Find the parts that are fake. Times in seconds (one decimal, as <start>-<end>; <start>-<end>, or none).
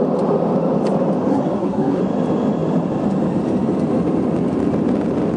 1.3-2.0